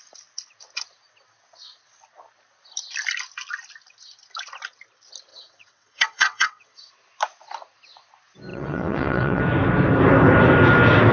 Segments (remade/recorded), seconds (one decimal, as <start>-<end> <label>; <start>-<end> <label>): 0.0-5.3 recorded; 5.3-6.9 remade; 6.9-8.5 recorded; 8.5-9.4 remade; 9.4-11.1 recorded